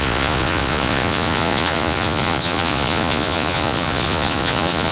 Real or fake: fake